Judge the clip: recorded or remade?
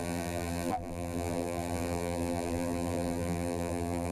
remade